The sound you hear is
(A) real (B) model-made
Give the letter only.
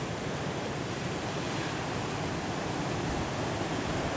A